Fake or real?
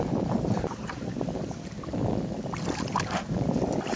real